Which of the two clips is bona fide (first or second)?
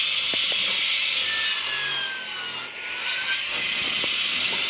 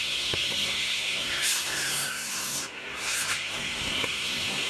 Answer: first